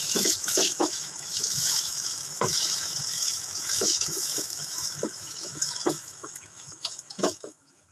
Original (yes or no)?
no